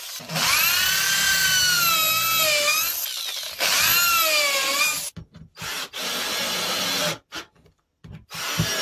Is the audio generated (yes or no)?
no